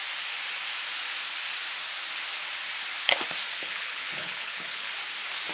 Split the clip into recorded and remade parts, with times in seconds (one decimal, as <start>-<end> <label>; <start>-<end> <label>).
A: 0.0-3.5 recorded; 3.5-4.9 remade; 4.9-5.5 recorded